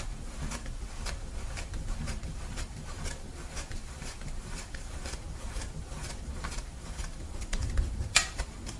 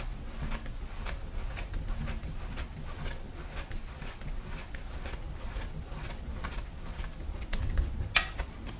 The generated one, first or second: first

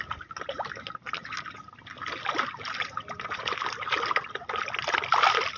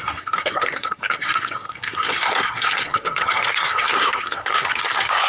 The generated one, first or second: second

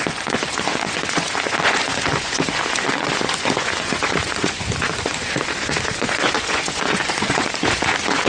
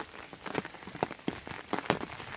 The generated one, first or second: first